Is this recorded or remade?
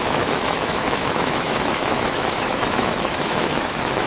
remade